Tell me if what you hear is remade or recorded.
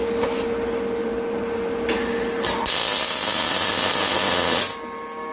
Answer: recorded